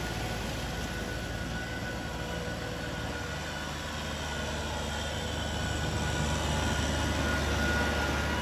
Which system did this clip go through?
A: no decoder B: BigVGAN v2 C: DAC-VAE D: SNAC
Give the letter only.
A